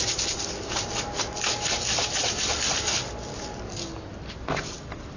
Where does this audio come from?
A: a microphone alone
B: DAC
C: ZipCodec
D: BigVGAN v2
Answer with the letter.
A